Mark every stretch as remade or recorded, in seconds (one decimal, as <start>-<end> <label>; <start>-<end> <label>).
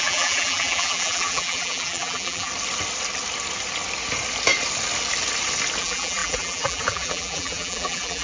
0.0-2.5 remade; 2.5-5.8 recorded; 5.8-8.2 remade